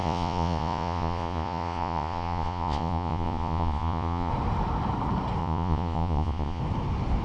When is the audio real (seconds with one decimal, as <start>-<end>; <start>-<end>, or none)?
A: 4.3-5.4; 6.6-7.2